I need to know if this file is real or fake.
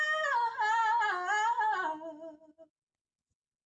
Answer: real